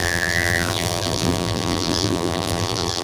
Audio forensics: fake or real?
fake